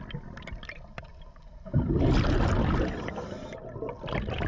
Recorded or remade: recorded